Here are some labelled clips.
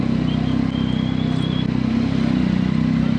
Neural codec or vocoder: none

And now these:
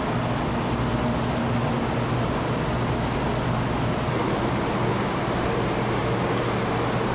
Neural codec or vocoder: none